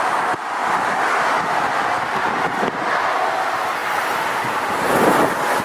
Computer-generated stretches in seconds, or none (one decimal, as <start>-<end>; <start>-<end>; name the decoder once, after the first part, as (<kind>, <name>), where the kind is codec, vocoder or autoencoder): none